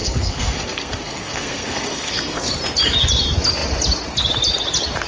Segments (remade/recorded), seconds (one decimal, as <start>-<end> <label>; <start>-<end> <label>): 0.0-2.5 remade; 2.5-5.1 recorded